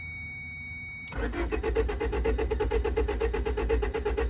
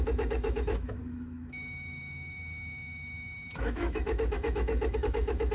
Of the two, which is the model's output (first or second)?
second